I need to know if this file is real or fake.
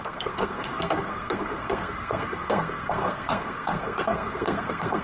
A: fake